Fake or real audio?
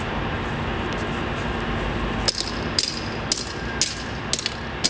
real